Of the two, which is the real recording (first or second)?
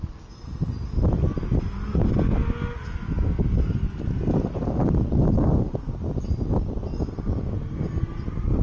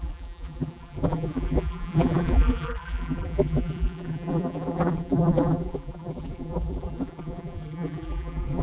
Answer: first